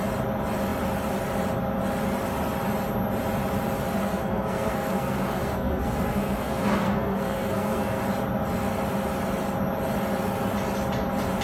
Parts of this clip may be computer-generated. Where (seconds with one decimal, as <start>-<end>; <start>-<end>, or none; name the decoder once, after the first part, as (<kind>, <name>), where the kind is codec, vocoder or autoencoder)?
4.1-8.0 (codec, SNAC)